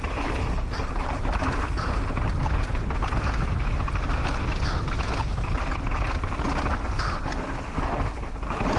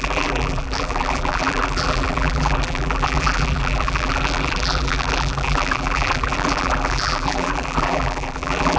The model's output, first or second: second